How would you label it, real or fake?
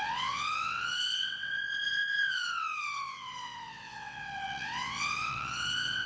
fake